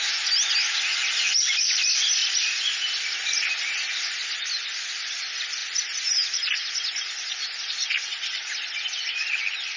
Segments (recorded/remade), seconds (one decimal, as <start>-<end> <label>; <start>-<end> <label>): 0.0-2.2 recorded; 2.2-3.5 remade; 3.5-5.6 recorded; 5.6-9.4 remade; 9.4-9.8 recorded